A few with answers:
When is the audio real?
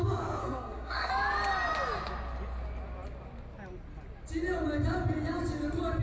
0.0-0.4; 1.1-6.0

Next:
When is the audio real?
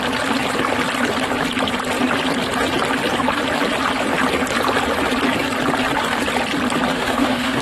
0.0-6.9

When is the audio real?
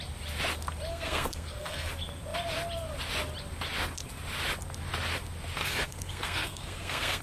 0.0-0.9; 1.9-5.6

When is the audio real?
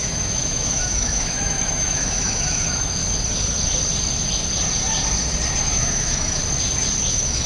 3.0-5.6; 6.4-7.1